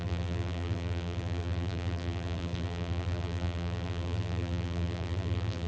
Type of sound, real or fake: fake